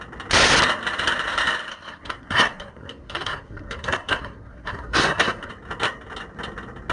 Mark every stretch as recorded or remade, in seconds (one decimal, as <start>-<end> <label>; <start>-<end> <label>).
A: 0.0-1.7 recorded; 1.7-5.5 remade; 5.5-6.9 recorded